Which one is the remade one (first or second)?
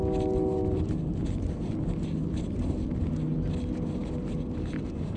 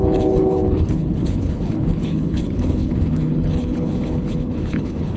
second